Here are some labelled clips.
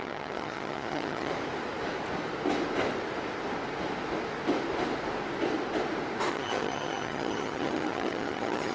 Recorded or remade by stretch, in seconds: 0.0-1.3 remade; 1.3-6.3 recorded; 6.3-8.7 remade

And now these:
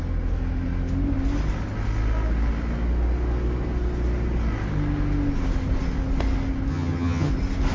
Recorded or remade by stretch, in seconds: 0.0-6.7 recorded; 6.7-7.3 remade; 7.3-7.7 recorded

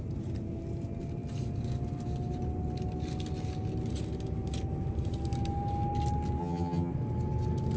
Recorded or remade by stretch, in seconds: 0.0-6.4 recorded; 6.4-6.9 remade; 6.9-7.8 recorded

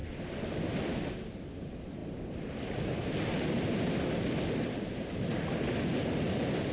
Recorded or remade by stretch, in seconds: 0.0-6.7 recorded

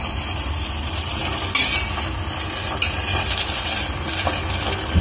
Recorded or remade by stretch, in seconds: 0.0-5.0 recorded

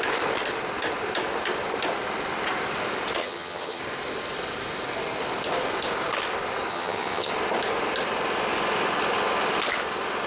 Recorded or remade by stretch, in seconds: 0.0-3.2 recorded; 3.2-3.8 remade; 3.8-6.7 recorded; 6.7-7.3 remade; 7.3-10.3 recorded

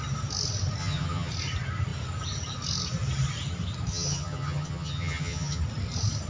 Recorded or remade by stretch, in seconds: 0.0-0.8 recorded; 0.8-1.3 remade; 1.3-3.9 recorded; 3.9-5.6 remade; 5.6-6.3 recorded

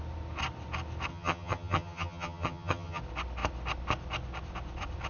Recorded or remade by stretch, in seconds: 0.0-1.1 recorded; 1.1-3.0 remade; 3.0-5.1 recorded